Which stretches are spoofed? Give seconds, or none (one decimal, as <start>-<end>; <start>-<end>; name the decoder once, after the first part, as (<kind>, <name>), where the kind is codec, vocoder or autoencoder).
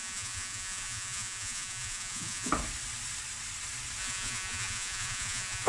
0.0-2.5 (vocoder, Vocos); 4.0-5.7